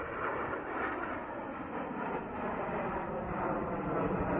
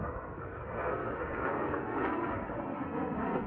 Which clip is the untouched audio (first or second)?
first